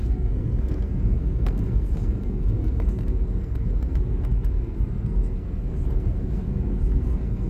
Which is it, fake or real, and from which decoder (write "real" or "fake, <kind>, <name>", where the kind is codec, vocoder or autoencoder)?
fake, codec, SNAC